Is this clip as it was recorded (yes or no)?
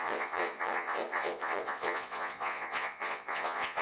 no